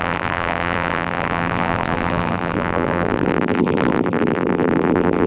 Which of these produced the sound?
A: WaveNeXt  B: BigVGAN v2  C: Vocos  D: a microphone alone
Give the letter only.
B